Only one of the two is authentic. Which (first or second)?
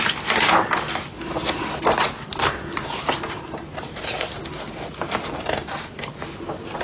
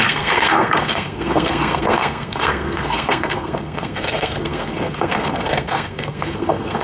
first